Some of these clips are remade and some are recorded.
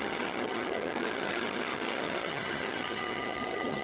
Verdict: remade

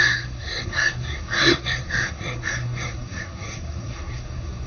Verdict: remade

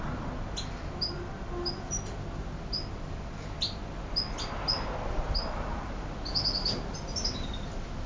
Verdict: recorded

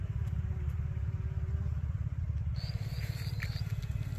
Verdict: recorded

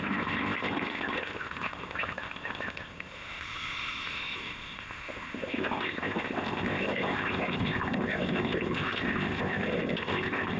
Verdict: remade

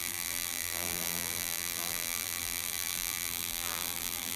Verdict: remade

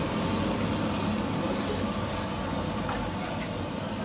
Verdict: recorded